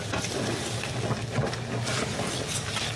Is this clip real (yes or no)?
yes